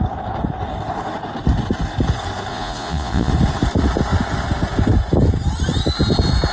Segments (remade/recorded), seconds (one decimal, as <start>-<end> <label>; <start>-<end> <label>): 0.0-2.5 recorded; 2.5-3.3 remade; 3.3-6.5 recorded